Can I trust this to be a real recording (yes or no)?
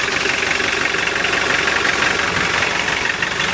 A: yes